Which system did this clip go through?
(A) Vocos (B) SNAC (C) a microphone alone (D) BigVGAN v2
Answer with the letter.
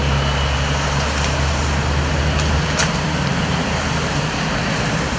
C